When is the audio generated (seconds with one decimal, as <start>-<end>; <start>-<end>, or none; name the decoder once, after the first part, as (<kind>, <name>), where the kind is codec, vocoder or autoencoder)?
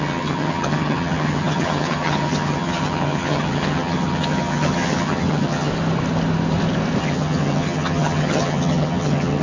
0.0-5.7 (vocoder, HiFi-GAN); 7.0-9.4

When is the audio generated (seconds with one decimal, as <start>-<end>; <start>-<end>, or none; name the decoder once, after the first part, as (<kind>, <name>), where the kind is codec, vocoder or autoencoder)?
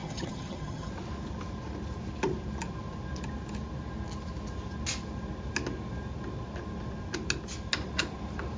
0.0-0.9 (vocoder, HiFi-GAN)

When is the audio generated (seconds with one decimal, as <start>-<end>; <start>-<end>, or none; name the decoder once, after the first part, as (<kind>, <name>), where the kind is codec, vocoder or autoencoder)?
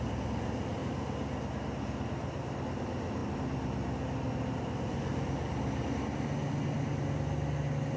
none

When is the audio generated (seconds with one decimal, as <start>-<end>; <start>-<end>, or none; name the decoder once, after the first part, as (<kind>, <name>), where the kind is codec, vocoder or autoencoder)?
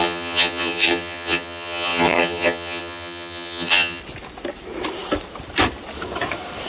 0.0-4.0 (vocoder, HiFi-GAN)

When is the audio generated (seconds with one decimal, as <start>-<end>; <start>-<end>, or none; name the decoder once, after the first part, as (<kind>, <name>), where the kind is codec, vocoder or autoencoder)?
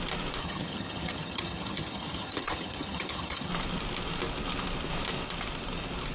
0.4-3.5 (vocoder, HiFi-GAN)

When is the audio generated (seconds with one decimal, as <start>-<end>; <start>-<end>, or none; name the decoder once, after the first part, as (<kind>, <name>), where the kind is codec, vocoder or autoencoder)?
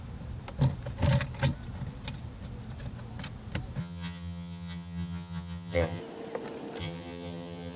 3.8-6.0 (vocoder, HiFi-GAN); 6.8-7.8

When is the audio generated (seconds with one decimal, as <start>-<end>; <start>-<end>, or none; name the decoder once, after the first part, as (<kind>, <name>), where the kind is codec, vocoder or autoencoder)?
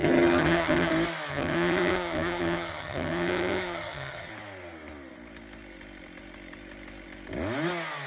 0.0-0.9 (vocoder, HiFi-GAN); 1.3-4.3